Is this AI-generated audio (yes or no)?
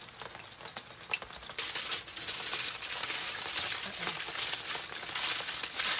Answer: no